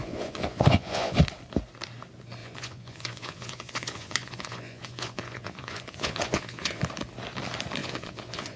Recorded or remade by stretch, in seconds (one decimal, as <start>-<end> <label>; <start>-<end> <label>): 0.0-1.2 remade; 1.2-2.4 recorded; 2.4-6.8 remade; 6.8-7.8 recorded; 7.8-8.6 remade